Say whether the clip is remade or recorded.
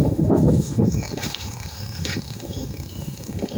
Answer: remade